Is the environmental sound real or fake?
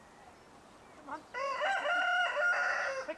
real